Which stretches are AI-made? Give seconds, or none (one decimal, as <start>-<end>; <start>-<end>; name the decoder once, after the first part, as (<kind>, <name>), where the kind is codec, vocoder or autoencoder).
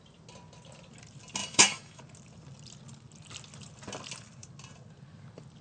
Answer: 1.4-2.0 (autoencoder, DAC-VAE)